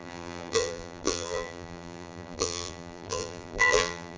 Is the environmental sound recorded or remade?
remade